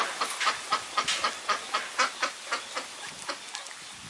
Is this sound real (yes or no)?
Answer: yes